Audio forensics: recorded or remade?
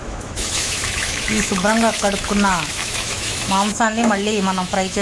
remade